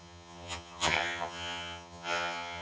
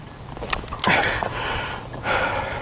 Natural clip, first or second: second